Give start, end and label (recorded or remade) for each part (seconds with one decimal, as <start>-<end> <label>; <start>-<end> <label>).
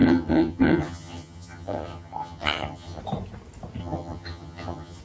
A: 0.0-3.0 remade; 3.0-3.8 recorded; 3.8-5.0 remade